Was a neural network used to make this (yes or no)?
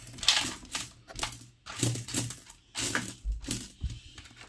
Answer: no